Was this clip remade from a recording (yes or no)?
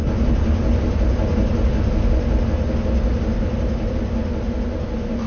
no